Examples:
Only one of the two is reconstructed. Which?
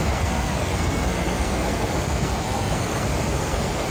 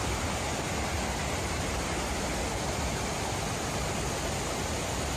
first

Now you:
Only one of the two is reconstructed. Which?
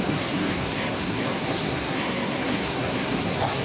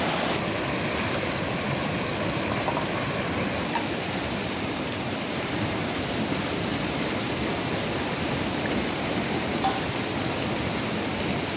first